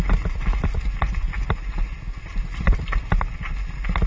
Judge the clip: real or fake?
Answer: real